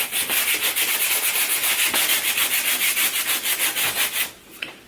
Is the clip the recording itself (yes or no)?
yes